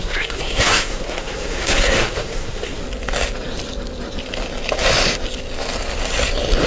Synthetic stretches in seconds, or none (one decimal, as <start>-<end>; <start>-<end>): 0.0-2.8